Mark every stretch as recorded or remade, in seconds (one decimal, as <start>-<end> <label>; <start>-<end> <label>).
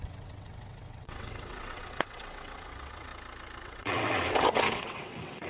0.0-3.1 remade; 3.1-3.6 recorded; 3.6-5.5 remade